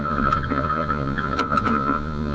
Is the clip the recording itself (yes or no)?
no